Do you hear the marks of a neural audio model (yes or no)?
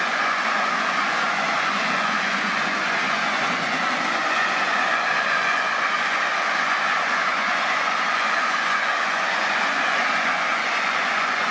yes